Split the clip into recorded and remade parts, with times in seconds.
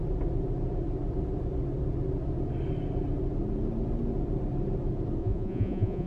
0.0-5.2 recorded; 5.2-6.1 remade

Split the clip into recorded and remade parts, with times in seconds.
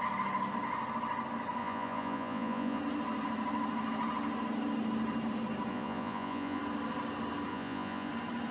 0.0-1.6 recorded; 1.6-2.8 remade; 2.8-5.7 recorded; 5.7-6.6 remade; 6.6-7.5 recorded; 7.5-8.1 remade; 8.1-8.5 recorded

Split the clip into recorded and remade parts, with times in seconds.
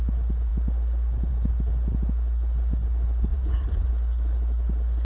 0.0-3.3 recorded; 3.3-3.9 remade; 3.9-5.0 recorded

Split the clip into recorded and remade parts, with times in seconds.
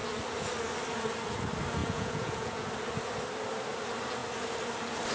0.0-1.8 recorded; 1.8-2.7 remade; 2.7-5.1 recorded